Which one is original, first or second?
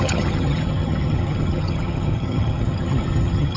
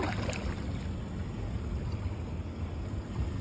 second